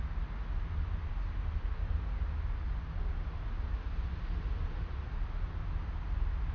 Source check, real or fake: real